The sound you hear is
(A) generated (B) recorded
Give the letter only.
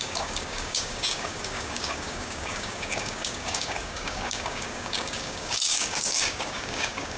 A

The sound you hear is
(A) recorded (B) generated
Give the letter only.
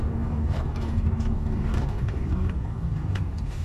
B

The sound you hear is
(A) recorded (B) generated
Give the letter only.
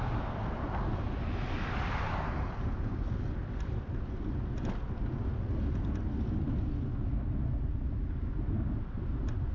A